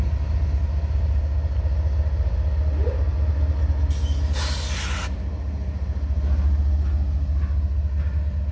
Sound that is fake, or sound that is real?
real